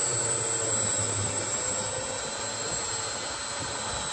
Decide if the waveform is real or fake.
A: real